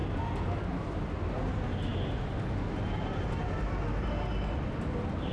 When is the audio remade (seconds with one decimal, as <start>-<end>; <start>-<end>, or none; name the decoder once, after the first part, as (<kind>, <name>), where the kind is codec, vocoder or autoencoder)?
none